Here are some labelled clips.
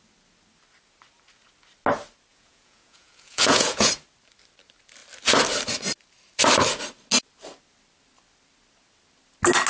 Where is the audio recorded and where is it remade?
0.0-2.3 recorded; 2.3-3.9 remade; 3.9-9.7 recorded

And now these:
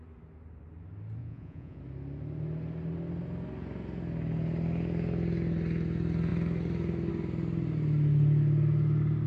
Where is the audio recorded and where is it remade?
0.0-1.2 recorded; 1.2-1.8 remade; 1.8-9.3 recorded